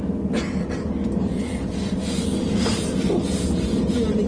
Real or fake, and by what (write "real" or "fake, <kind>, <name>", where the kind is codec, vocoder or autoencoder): real